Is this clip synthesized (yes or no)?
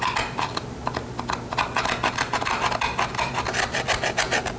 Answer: no